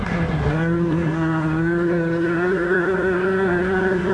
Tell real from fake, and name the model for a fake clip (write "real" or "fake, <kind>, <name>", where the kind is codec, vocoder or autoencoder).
fake, codec, SNAC